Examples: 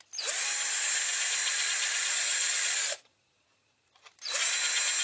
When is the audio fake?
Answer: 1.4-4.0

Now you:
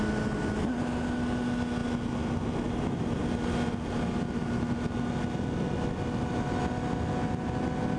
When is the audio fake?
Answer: none

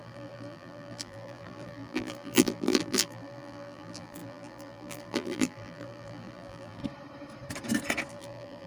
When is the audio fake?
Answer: 0.0-6.8; 8.1-8.7

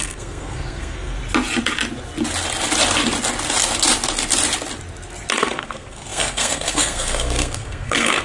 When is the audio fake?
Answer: 0.0-1.2; 5.4-8.2

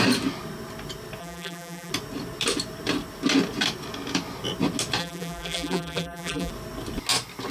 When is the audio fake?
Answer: 1.2-1.9; 5.0-6.5

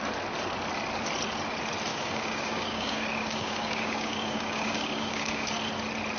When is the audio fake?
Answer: 1.9-5.5

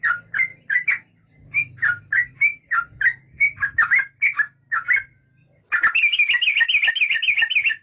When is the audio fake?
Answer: 0.5-1.1

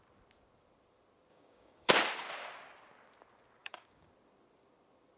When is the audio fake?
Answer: 1.3-1.9; 3.6-4.1